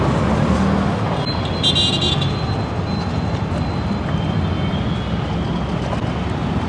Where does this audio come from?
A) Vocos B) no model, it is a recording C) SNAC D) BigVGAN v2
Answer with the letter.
B